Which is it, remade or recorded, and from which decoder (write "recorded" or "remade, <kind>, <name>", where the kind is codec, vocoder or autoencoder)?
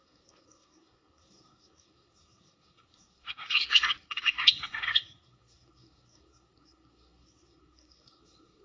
remade, codec, SNAC